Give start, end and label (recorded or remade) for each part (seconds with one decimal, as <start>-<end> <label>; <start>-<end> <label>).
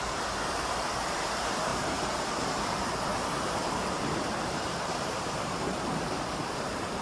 0.0-7.0 remade